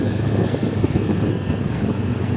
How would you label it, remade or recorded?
remade